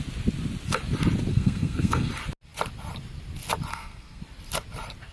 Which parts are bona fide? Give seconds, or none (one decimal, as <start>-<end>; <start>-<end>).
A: 0.0-1.3; 2.1-3.7; 4.2-5.1